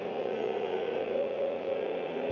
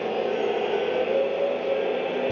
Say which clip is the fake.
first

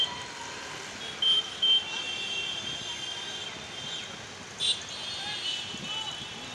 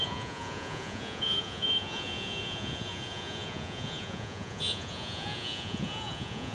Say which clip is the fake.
second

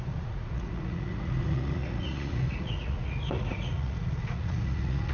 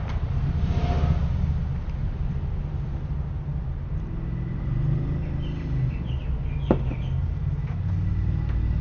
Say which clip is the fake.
first